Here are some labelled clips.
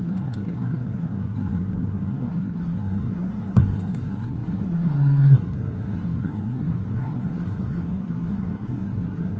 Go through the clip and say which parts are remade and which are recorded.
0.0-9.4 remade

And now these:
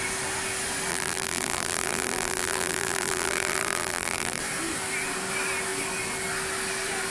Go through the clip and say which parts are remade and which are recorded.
0.0-0.9 recorded; 0.9-4.4 remade; 4.4-7.1 recorded

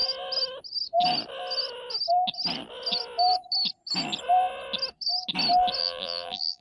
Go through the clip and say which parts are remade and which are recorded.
0.0-5.8 recorded; 5.8-6.6 remade

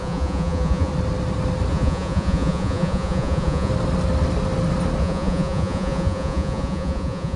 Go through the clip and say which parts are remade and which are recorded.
0.0-0.9 remade; 0.9-1.7 recorded; 1.7-3.7 remade; 3.7-5.0 recorded; 5.0-7.4 remade